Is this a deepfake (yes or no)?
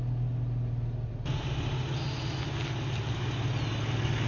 no